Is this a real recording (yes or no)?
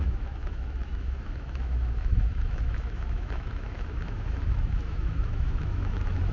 no